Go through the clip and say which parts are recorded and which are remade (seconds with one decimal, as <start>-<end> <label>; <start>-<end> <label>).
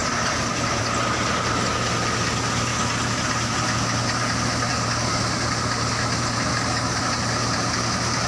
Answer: 0.0-4.7 recorded; 4.7-5.2 remade; 5.2-6.5 recorded; 6.5-7.0 remade; 7.0-8.3 recorded